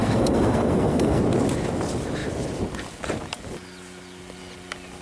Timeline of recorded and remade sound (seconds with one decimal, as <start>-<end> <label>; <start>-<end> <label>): 0.0-1.2 remade; 1.2-5.0 recorded